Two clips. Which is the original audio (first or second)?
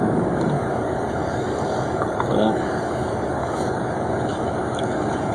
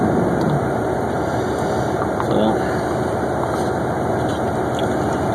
second